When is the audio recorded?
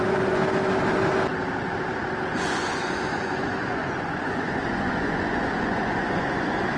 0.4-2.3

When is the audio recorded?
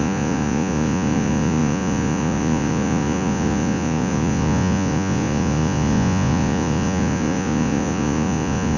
none